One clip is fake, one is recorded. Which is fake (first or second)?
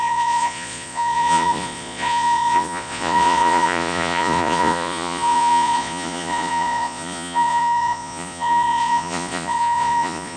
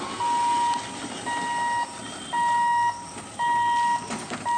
first